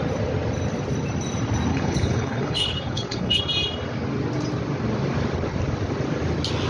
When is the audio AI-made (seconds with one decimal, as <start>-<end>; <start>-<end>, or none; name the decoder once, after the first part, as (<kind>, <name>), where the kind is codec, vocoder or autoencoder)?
1.7-3.4 (codec, HILCodec)